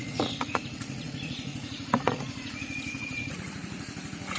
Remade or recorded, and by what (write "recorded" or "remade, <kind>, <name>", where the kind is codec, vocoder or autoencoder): remade, vocoder, Vocos